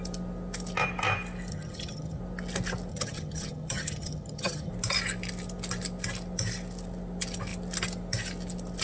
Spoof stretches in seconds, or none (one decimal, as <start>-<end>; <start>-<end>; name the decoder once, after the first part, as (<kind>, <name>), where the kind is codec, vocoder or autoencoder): 1.5-2.2 (vocoder, HiFi-GAN); 2.9-4.7